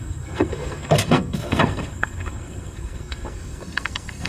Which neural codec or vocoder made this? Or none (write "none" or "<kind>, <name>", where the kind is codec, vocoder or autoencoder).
codec, SNAC